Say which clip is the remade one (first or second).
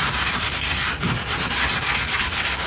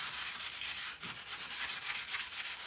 second